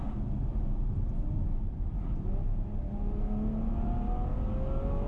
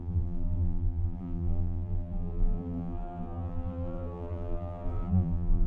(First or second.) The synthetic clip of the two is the second